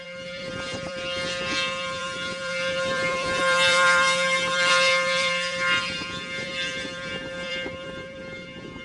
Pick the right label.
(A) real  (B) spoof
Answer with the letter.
B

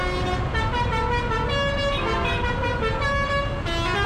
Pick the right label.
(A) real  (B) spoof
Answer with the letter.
A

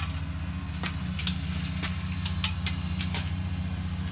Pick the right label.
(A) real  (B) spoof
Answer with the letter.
A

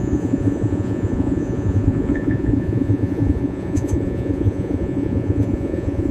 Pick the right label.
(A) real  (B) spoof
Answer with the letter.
B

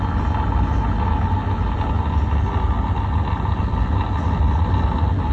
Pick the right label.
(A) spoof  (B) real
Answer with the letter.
B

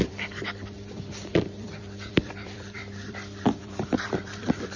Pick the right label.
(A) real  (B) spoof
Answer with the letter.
B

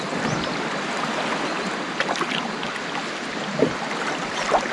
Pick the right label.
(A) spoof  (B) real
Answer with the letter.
B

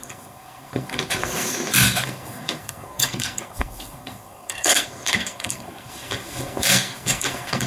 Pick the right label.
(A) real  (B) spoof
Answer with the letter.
B